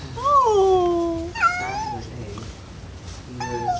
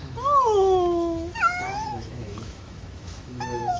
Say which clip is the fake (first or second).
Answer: second